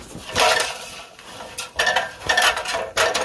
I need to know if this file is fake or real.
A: real